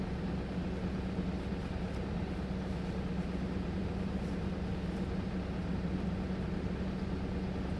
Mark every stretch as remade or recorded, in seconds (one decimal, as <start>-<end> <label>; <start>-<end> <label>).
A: 0.0-7.8 recorded